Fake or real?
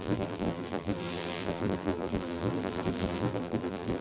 fake